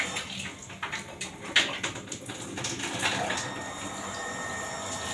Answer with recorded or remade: recorded